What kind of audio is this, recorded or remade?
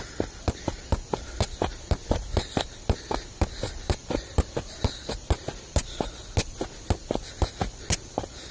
recorded